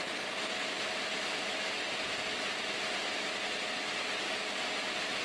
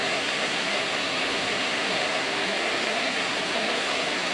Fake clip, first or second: second